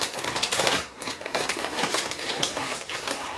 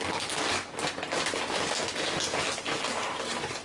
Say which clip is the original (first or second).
second